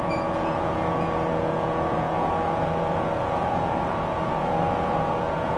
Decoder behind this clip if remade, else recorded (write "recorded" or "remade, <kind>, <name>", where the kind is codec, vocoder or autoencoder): remade, vocoder, Vocos